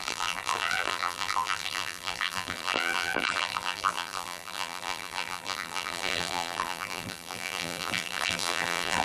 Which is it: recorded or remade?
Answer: remade